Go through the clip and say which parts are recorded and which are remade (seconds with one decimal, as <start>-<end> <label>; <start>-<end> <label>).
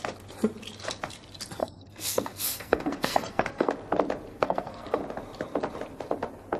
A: 0.0-1.6 recorded; 1.6-3.7 remade; 3.7-4.3 recorded; 4.3-5.0 remade; 5.0-6.6 recorded